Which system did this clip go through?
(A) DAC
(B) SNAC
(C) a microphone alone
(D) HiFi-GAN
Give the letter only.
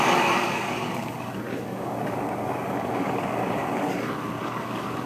A